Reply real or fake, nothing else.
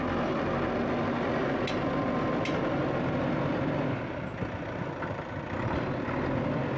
real